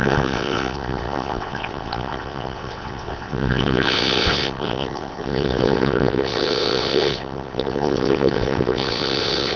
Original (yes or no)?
no